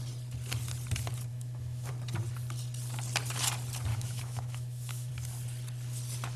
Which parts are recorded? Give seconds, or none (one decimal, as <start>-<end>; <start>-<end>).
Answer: 0.0-1.3; 1.9-3.9; 5.1-6.4